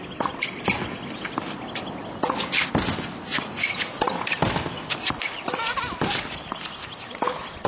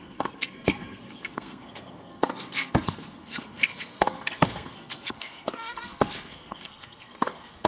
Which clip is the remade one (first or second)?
second